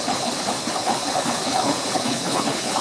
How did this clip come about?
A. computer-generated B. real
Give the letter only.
A